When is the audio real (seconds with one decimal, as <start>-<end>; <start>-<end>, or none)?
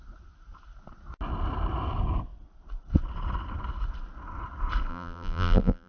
0.0-4.9